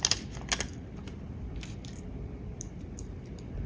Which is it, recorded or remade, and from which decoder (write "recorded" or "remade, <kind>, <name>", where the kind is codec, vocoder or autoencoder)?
recorded